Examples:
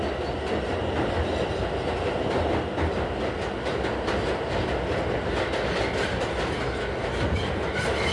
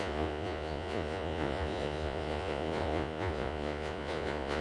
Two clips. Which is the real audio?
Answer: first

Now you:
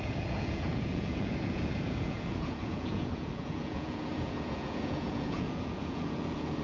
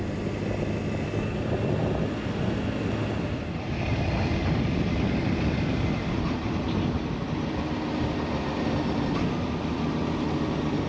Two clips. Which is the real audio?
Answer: second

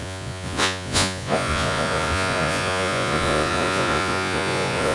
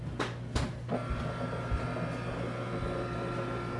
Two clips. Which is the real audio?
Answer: second